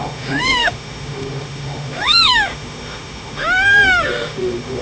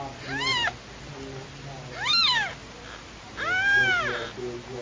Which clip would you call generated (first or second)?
first